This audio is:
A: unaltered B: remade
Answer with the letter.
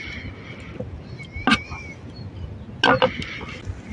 A